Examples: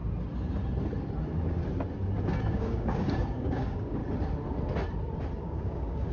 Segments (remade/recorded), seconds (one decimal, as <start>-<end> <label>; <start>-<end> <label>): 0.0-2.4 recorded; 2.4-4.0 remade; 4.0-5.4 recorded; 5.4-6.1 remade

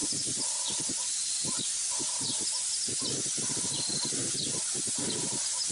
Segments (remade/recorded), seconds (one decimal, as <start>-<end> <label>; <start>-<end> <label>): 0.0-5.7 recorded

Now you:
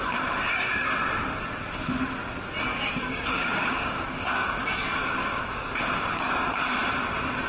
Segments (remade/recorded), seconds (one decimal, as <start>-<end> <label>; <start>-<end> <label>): 0.0-2.7 recorded; 2.7-6.4 remade; 6.4-7.5 recorded